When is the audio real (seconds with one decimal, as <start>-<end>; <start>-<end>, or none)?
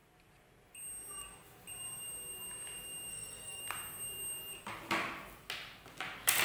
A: 0.0-3.1; 3.6-6.4